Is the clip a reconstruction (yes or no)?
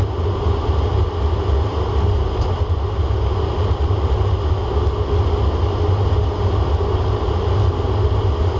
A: no